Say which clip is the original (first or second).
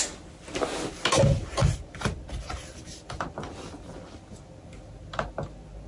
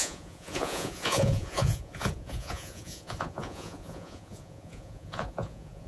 first